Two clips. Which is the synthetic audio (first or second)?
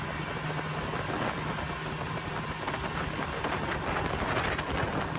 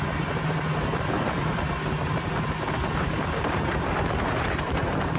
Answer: second